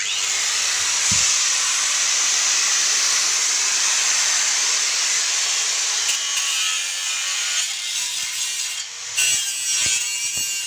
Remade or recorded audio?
recorded